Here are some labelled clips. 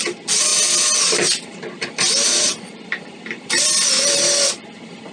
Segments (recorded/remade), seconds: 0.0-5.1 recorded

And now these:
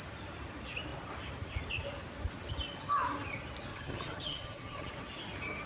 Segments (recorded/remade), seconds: 0.0-3.7 recorded; 3.7-4.9 remade; 4.9-5.7 recorded